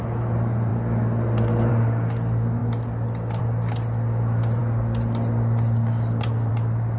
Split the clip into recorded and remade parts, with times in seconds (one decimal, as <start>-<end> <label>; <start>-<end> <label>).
0.0-7.0 recorded